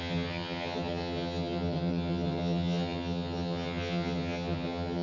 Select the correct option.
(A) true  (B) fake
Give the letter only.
B